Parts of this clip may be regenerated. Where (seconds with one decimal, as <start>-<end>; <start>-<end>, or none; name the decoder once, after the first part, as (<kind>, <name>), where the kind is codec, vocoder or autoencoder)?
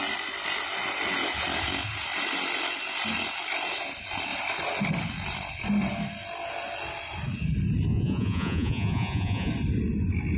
7.9-9.5 (vocoder, Vocos)